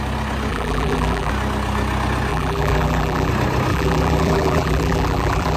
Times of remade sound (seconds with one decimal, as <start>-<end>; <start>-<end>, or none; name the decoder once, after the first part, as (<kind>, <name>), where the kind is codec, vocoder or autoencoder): 0.5-1.3 (vocoder, BigVGAN v2); 2.3-3.3; 3.7-5.6

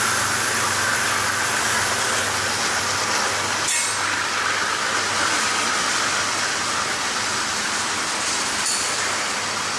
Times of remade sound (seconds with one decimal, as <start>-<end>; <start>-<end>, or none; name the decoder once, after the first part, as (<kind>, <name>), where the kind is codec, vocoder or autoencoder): 0.0-0.9 (vocoder, BigVGAN v2); 5.3-9.8

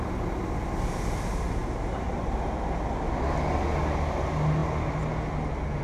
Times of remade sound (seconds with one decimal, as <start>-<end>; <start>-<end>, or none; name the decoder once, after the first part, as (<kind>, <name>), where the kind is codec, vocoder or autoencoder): none

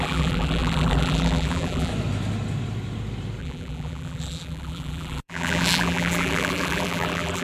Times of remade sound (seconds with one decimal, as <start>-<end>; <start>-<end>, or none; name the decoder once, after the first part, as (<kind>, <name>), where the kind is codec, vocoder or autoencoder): 0.0-1.9 (vocoder, BigVGAN v2); 3.4-7.4

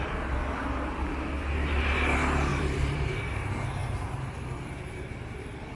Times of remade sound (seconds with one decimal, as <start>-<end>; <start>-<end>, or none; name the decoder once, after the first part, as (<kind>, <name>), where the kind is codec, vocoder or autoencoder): 2.5-3.1 (vocoder, BigVGAN v2); 3.8-4.4

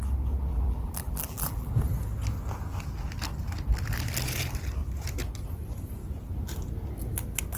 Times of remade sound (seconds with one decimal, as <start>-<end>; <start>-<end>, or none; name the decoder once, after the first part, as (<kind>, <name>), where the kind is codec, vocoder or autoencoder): 0.5-1.7 (vocoder, BigVGAN v2)

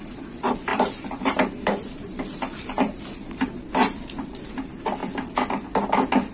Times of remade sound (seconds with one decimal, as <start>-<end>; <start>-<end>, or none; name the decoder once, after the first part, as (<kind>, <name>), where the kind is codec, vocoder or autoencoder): 0.0-5.0 (vocoder, BigVGAN v2)

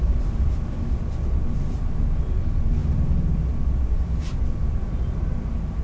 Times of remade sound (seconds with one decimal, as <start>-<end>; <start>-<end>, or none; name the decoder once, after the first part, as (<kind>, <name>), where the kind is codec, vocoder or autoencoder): 0.0-5.8 (vocoder, BigVGAN v2)